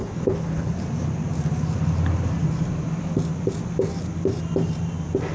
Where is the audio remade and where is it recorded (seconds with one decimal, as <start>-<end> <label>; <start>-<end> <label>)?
0.0-0.7 remade; 0.7-5.3 recorded